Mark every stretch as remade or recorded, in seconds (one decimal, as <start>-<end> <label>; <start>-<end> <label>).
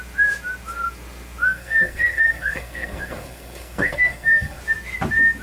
0.0-1.4 recorded; 1.4-4.6 remade; 4.6-5.4 recorded